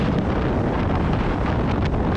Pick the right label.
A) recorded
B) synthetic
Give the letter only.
A